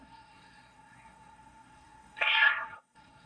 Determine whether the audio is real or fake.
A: fake